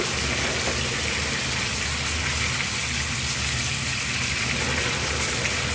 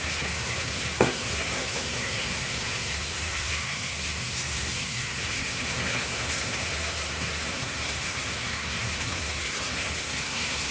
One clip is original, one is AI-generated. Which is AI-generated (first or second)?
second